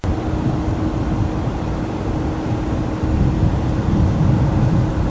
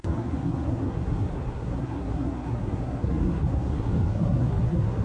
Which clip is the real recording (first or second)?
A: first